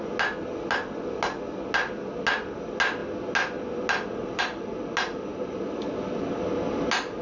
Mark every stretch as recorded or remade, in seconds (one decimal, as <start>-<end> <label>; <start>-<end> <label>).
0.0-7.2 recorded